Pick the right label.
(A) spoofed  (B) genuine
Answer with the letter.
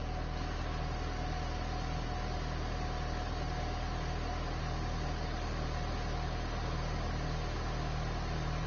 B